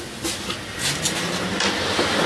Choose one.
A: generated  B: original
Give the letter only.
B